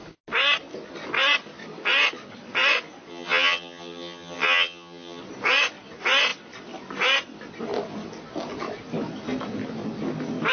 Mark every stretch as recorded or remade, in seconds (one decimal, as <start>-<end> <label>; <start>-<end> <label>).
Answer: 0.0-3.1 recorded; 3.1-5.2 remade; 5.2-10.5 recorded